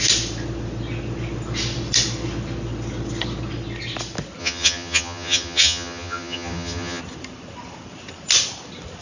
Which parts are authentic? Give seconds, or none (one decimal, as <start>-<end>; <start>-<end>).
0.0-4.4; 7.0-9.0